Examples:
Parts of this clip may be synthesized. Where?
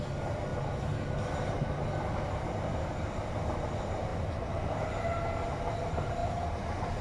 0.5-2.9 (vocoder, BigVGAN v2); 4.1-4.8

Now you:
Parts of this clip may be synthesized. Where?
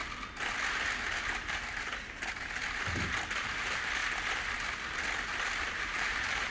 1.2-2.6 (vocoder, BigVGAN v2); 3.3-4.0; 5.6-6.5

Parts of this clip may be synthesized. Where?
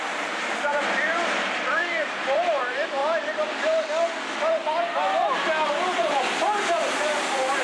0.0-3.0 (vocoder, BigVGAN v2); 5.7-7.6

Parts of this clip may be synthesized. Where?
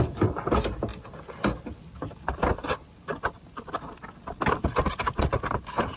none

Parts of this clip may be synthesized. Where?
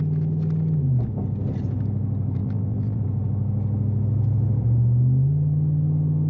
2.4-3.0 (vocoder, BigVGAN v2)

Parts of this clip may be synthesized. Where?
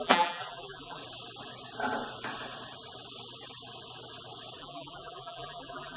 0.0-1.0 (vocoder, BigVGAN v2); 4.6-6.0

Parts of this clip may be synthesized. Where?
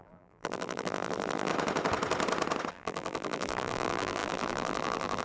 0.0-1.5 (vocoder, BigVGAN v2); 2.7-5.2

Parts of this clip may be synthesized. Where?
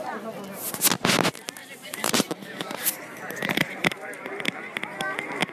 1.6-4.3 (vocoder, BigVGAN v2)